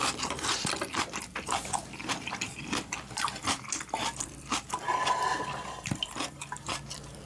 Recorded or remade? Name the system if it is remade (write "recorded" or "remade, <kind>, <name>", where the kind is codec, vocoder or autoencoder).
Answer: remade, vocoder, BigVGAN v2